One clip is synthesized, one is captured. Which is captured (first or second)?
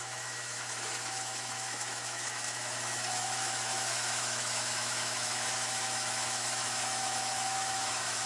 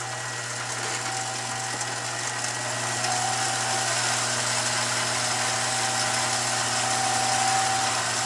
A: second